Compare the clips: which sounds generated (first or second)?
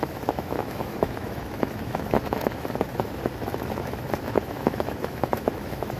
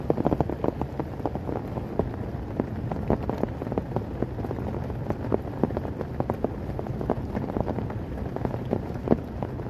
first